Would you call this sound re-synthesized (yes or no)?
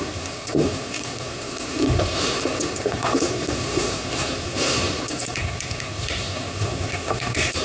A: yes